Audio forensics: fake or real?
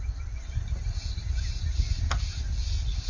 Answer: real